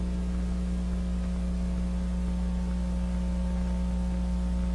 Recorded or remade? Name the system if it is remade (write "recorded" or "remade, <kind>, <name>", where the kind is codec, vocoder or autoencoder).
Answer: recorded